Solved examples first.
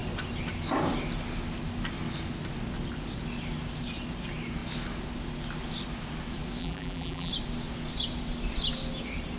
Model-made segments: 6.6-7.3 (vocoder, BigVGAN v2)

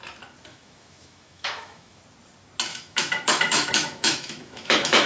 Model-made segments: 0.5-2.0 (autoencoder, DAC-VAE); 2.7-5.1